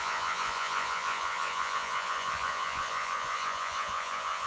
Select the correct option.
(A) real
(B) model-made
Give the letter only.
B